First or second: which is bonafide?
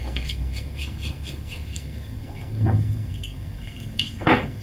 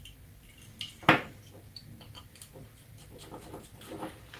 second